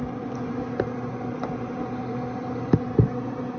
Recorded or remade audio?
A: recorded